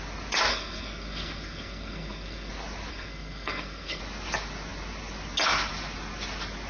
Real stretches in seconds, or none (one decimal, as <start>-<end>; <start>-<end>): 0.0-0.5; 2.5-2.9; 4.0-6.7

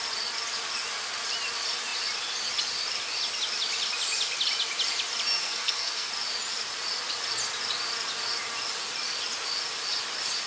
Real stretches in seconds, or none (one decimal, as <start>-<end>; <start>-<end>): 0.0-5.4; 6.1-10.5

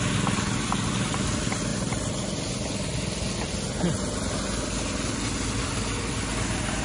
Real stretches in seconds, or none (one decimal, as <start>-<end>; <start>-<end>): 0.0-6.8

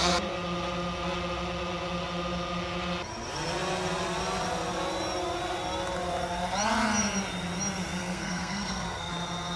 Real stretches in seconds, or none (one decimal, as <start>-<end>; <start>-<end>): 0.0-8.0; 9.1-9.6

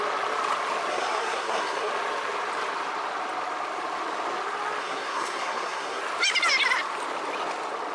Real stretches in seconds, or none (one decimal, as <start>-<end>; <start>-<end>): 0.0-0.9; 1.9-4.8; 6.0-7.9

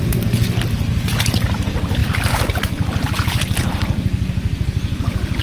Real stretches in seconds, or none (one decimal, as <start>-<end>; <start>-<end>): 0.0-5.4

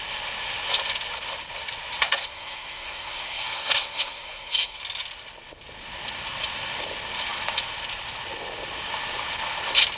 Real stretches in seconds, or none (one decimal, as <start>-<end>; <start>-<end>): 0.0-2.0; 4.8-10.0